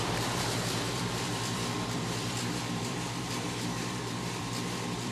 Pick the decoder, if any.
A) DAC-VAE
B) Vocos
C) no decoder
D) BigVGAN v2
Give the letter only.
D